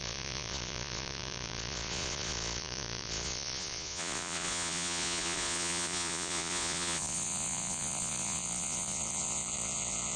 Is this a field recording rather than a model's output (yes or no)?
no